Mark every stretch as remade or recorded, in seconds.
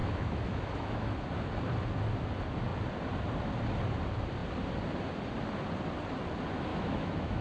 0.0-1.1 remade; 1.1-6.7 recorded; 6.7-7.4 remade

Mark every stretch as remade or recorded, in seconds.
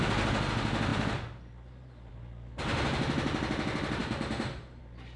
0.0-5.2 recorded